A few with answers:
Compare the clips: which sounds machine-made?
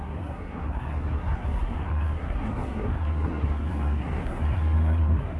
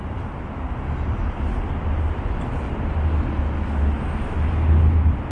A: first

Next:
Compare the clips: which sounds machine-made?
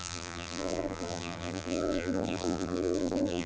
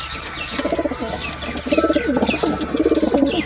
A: first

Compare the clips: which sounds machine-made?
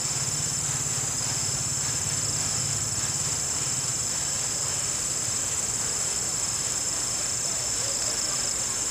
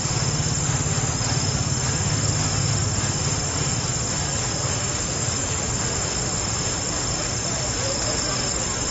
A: first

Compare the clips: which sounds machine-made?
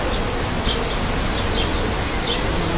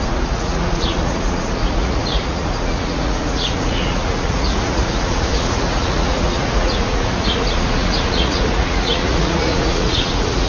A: second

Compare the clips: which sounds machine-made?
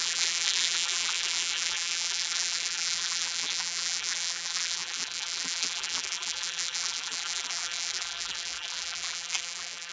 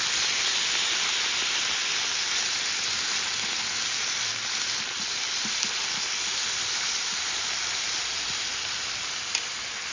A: first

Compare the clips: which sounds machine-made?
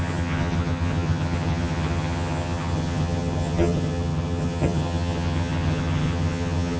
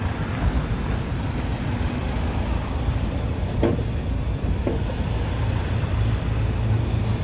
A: first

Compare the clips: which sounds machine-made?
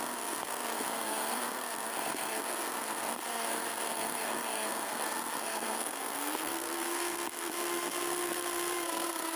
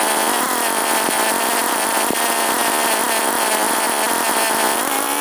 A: first